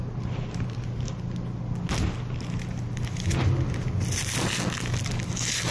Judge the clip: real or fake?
real